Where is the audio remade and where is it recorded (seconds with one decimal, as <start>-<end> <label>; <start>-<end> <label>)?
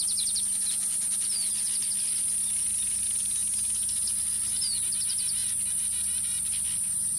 0.0-7.2 recorded